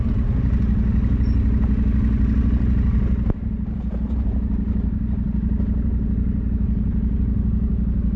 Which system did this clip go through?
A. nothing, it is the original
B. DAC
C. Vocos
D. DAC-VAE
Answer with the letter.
A